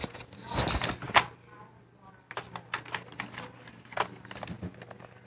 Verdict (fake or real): real